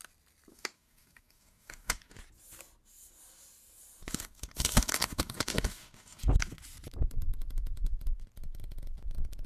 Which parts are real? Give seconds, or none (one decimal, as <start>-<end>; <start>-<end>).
0.0-0.5; 2.2-4.1; 6.2-9.5